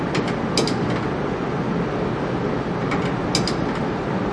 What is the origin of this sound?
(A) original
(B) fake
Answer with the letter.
A